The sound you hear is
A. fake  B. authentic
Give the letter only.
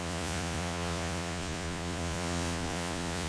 A